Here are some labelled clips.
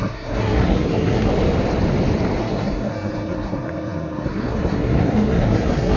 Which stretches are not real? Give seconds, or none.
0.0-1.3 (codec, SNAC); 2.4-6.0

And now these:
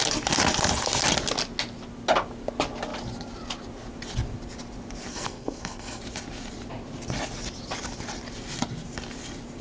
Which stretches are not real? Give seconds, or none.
5.1-6.0 (codec, SNAC)

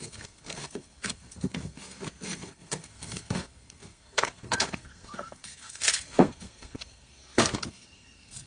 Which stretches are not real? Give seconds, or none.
0.0-8.5 (codec, SNAC)

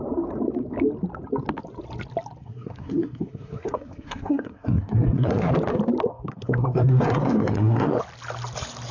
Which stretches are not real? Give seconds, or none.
2.4-5.5 (codec, SNAC); 6.1-8.0

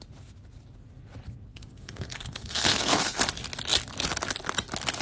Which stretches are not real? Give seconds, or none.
1.5-3.2 (codec, SNAC)

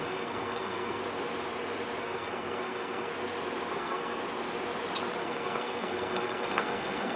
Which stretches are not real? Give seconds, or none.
0.0-1.0 (codec, SNAC); 2.0-3.1; 3.7-4.2; 5.2-7.2

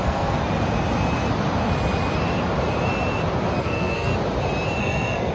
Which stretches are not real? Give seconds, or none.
0.0-0.4 (codec, SNAC); 3.6-4.1; 4.8-5.3